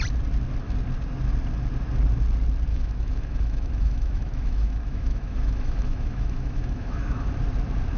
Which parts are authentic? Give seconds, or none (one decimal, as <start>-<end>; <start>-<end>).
0.0-2.7; 7.3-8.0